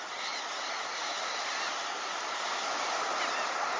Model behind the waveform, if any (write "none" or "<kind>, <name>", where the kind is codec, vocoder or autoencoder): none